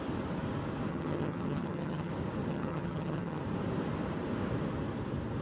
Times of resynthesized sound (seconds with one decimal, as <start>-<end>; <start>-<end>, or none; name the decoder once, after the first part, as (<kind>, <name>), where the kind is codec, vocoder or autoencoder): 0.9-2.1 (vocoder, HiFi-GAN); 2.5-3.4